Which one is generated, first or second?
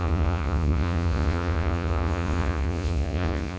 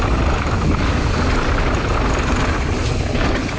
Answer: first